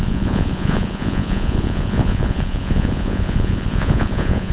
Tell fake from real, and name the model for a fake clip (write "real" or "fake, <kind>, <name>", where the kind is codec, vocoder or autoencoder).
fake, vocoder, Vocos